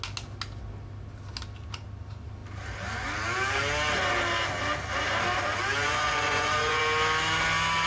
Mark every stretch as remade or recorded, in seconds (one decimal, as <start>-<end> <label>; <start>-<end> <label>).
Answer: 0.0-5.8 recorded; 5.8-6.8 remade; 6.8-7.9 recorded